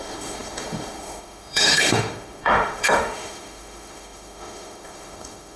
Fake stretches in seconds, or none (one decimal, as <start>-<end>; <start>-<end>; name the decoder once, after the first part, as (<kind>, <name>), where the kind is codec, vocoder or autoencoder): 0.0-5.6 (autoencoder, DAC-VAE)